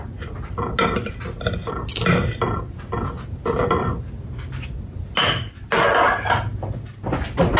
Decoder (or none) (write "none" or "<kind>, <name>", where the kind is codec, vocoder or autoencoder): none